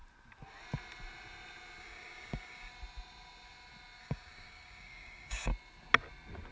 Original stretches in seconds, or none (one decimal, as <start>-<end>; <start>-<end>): 0.0-1.8; 2.7-4.0; 5.5-6.5